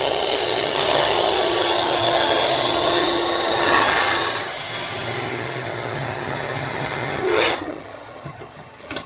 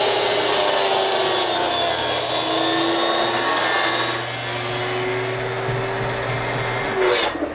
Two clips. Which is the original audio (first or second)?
second